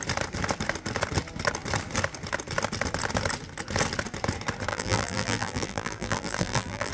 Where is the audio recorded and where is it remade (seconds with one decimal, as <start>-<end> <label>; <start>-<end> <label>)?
0.0-4.7 recorded; 4.7-6.9 remade